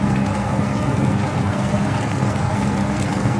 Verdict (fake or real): fake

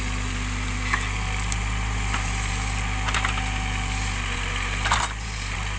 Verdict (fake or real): real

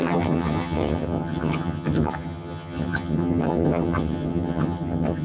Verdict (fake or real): fake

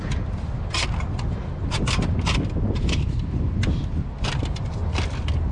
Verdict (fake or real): real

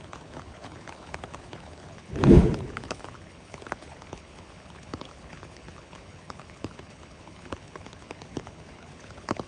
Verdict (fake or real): fake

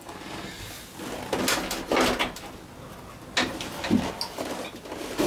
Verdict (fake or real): real